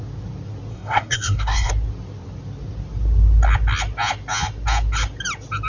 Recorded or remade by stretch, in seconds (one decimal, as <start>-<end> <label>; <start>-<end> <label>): 0.0-0.7 recorded; 0.7-1.7 remade; 1.7-5.7 recorded

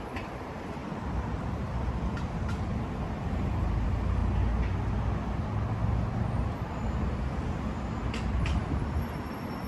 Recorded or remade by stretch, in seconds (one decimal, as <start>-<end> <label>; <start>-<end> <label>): 0.0-0.8 remade; 0.8-3.3 recorded; 3.3-4.2 remade; 4.2-8.4 recorded; 8.4-9.7 remade

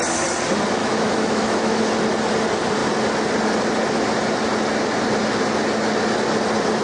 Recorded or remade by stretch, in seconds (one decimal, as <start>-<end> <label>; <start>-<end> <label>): 0.0-0.8 recorded; 0.8-1.9 remade; 1.9-6.8 recorded

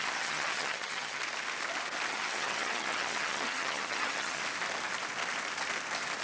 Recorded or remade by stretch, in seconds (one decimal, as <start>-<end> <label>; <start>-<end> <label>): 0.0-1.2 remade; 1.2-2.1 recorded; 2.1-4.4 remade; 4.4-6.2 recorded

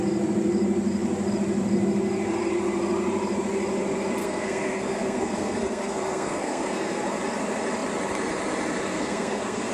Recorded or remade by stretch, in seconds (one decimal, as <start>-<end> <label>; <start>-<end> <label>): 0.0-4.2 recorded; 4.2-7.2 remade; 7.2-8.9 recorded; 8.9-9.7 remade

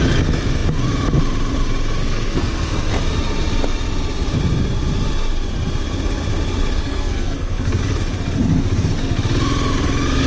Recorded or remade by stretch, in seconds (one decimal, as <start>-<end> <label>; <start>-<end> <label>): 0.0-2.0 recorded; 2.0-2.9 remade; 2.9-6.8 recorded; 6.8-7.8 remade; 7.8-10.3 recorded

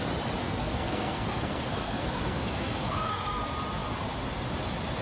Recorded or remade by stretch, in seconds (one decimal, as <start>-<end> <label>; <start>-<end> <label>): 0.0-0.4 recorded; 0.4-3.4 remade; 3.4-5.0 recorded